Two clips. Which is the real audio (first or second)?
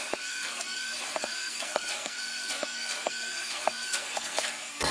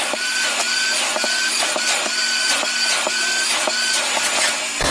second